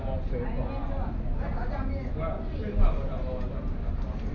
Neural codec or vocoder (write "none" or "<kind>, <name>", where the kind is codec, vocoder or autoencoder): none